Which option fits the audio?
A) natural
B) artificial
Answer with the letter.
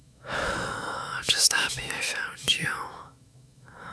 B